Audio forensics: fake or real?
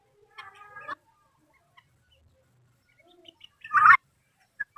real